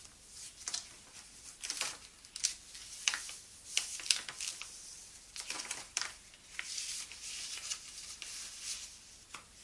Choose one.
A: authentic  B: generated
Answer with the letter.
A